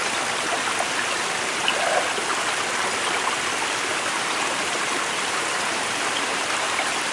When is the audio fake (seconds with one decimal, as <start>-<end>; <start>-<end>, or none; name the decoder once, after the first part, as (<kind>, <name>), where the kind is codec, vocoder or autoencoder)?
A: 3.9-7.1 (vocoder, BigVGAN v2)